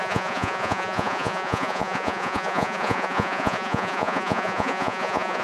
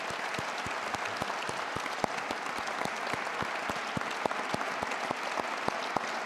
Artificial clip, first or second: first